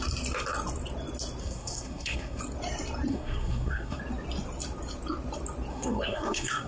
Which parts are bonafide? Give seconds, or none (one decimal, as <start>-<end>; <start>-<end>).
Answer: 0.0-1.4; 2.4-3.1; 4.0-5.7